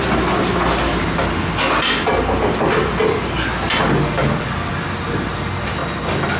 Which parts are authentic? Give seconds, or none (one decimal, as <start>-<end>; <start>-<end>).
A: 0.0-6.4